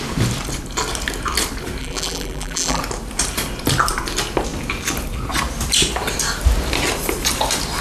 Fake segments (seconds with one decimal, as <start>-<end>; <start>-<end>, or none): 1.8-2.8